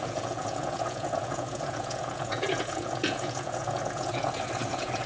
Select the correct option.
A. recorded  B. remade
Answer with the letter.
B